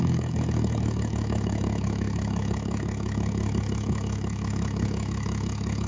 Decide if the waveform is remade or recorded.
remade